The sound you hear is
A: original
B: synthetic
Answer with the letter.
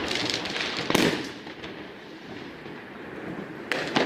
A